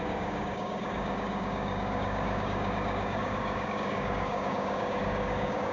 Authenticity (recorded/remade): remade